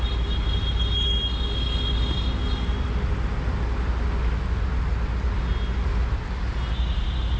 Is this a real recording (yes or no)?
yes